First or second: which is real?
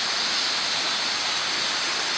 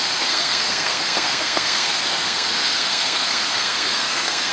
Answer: first